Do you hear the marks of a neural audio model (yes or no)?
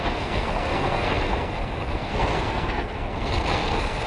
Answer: yes